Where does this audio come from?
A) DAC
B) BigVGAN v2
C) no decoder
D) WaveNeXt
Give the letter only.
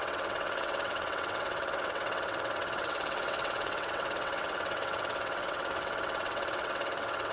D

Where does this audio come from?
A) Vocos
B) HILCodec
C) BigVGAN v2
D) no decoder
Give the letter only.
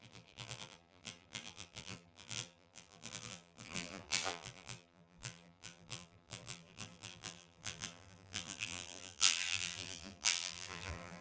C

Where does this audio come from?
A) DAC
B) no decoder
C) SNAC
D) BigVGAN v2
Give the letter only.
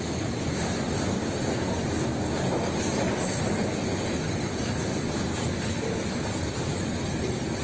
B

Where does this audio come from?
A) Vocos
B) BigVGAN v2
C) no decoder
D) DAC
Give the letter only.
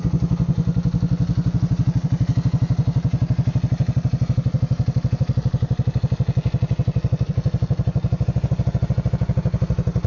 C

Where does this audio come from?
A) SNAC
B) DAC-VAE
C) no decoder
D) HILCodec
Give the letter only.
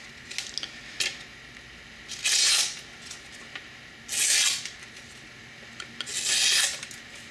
C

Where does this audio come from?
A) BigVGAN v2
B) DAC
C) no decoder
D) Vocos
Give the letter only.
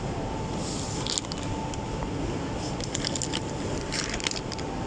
C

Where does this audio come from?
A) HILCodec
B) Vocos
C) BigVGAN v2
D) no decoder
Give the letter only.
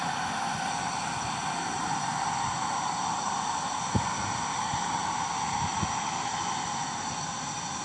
D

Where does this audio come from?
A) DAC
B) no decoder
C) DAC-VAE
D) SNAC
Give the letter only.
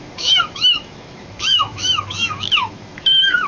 C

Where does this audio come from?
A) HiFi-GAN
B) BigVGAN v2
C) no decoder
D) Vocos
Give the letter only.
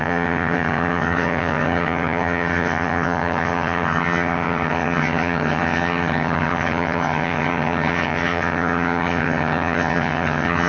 A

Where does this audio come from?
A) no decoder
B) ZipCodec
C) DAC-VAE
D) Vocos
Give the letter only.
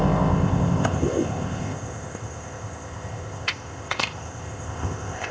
B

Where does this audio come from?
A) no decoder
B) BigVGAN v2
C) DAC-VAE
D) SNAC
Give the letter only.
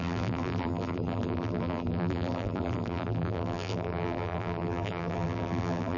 B